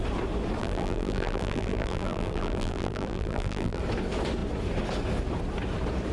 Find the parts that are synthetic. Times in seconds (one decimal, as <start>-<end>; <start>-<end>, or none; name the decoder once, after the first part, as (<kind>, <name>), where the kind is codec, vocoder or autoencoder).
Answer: 0.6-3.8 (vocoder, BigVGAN v2)